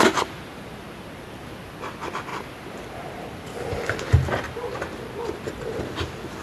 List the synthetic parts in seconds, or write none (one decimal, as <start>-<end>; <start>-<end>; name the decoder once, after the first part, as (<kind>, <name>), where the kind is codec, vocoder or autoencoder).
none